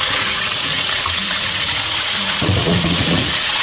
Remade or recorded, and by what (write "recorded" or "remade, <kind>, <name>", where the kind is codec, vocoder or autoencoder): remade, vocoder, Vocos